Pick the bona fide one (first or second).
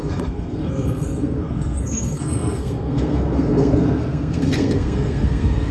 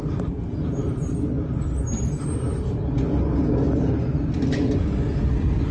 second